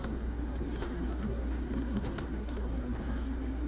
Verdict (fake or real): fake